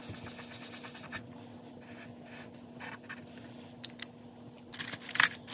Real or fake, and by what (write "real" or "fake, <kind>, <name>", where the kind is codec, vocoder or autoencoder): real